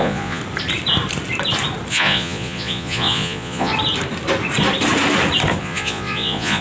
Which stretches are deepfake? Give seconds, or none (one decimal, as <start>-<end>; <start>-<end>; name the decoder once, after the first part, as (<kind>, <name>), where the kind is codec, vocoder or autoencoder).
0.0-0.4 (vocoder, Vocos); 1.9-3.7; 5.6-6.6